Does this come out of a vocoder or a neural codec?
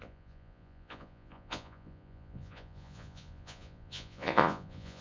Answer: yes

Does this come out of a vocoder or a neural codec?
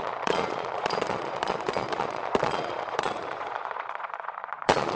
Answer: yes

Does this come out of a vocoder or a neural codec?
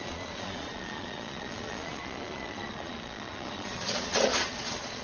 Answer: yes